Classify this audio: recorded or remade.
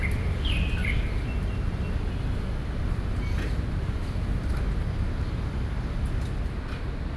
recorded